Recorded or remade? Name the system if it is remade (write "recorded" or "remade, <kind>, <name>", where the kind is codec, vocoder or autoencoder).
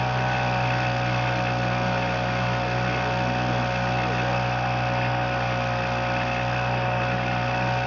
recorded